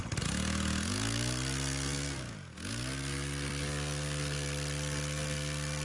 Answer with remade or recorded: recorded